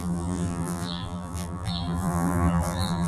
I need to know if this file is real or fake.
fake